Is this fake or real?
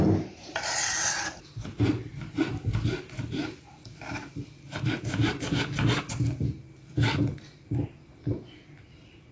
real